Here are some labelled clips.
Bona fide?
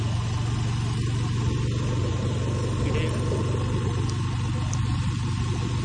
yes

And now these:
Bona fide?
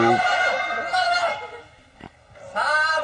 yes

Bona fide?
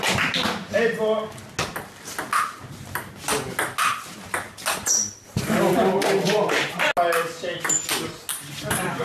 yes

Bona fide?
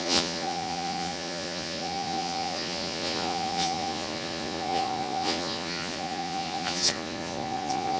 no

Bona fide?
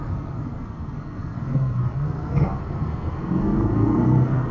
no